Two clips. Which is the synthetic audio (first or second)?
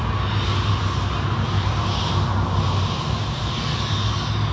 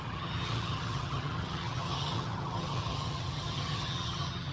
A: second